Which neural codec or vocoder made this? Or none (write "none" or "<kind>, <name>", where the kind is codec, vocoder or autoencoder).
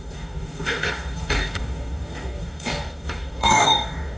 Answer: codec, DAC